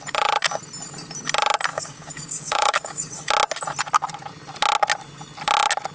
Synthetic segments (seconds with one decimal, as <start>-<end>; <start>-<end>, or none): 1.7-3.3